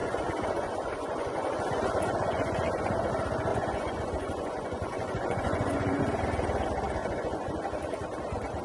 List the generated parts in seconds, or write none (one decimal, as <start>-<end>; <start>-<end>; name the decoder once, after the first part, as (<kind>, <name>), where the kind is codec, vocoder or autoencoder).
0.0-3.1 (vocoder, Vocos); 3.5-6.0; 7.0-7.6